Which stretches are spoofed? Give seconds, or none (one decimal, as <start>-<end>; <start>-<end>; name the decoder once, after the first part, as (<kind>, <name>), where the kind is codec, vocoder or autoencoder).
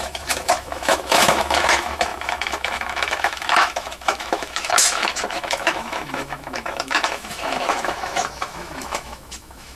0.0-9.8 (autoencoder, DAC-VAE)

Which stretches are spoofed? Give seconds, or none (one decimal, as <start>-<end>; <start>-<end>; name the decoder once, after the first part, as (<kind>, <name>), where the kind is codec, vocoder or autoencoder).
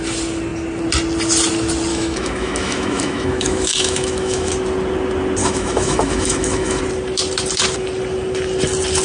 1.9-4.5 (autoencoder, DAC-VAE); 5.4-6.8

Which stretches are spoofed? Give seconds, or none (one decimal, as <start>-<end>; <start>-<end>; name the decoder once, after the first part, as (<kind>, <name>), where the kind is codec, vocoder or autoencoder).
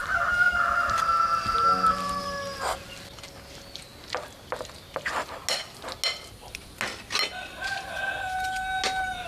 none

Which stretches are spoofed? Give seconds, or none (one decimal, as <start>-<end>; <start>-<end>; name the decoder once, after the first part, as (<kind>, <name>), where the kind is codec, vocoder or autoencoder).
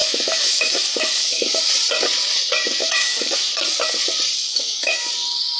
0.0-1.6 (autoencoder, DAC-VAE); 2.8-3.5; 4.5-5.1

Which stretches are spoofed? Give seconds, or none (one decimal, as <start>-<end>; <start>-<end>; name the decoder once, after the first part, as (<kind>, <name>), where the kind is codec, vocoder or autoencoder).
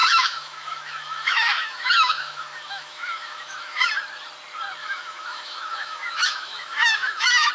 0.0-3.9 (autoencoder, DAC-VAE); 4.8-7.5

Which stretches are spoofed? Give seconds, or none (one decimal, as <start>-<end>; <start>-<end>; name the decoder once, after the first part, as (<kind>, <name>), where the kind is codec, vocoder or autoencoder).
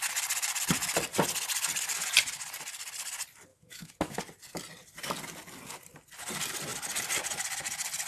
3.5-4.2 (autoencoder, DAC-VAE)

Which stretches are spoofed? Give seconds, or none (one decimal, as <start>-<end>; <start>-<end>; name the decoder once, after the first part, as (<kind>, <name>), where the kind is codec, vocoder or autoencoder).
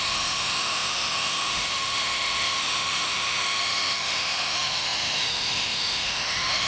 0.0-6.7 (autoencoder, DAC-VAE)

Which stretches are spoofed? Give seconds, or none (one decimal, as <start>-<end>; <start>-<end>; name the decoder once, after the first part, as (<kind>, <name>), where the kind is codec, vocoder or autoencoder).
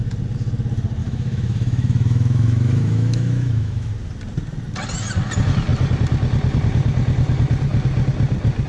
1.0-3.9 (autoencoder, DAC-VAE)